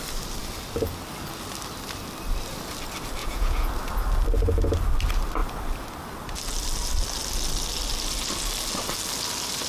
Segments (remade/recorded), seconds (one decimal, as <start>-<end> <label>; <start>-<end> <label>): 0.0-3.2 recorded; 3.2-3.7 remade; 3.7-9.7 recorded